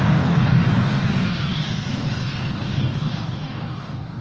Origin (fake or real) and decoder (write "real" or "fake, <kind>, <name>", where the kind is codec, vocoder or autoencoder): fake, codec, DAC